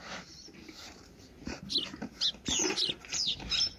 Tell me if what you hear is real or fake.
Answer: real